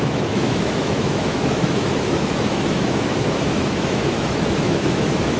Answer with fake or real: fake